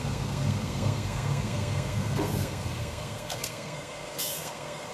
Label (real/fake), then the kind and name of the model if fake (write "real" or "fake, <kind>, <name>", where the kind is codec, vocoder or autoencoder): fake, codec, SNAC